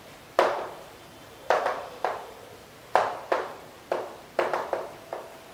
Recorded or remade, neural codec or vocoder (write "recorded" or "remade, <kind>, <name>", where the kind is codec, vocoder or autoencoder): remade, vocoder, BigVGAN v2